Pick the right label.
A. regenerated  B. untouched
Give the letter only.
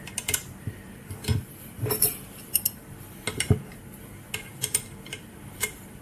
A